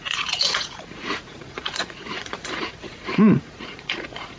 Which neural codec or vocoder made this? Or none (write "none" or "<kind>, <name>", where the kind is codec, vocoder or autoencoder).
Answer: vocoder, Vocos